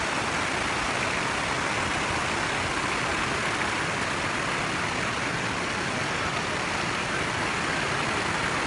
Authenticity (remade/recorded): recorded